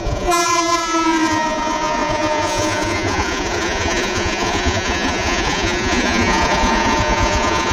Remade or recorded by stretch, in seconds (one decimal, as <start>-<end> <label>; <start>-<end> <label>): 0.0-7.7 remade